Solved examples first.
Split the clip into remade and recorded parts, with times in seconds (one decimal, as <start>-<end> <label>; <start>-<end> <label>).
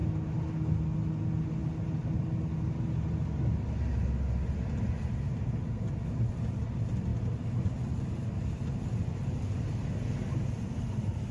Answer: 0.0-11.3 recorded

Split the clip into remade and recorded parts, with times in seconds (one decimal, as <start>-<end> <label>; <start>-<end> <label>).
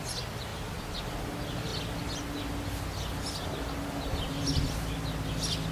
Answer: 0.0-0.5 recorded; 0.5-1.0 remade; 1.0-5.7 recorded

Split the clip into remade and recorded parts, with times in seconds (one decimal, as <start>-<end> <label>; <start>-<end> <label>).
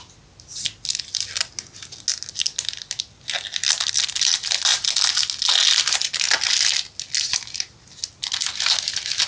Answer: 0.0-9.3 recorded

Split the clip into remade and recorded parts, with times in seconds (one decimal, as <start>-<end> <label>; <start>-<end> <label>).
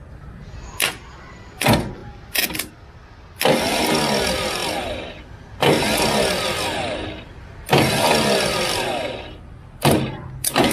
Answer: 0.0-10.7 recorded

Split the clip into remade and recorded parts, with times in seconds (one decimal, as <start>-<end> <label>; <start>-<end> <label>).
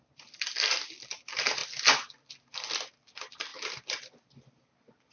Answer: 0.0-3.5 recorded; 3.5-4.1 remade; 4.1-5.1 recorded